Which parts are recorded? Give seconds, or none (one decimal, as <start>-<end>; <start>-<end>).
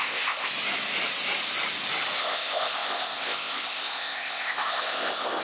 0.5-2.2